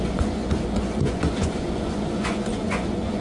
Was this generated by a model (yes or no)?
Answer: yes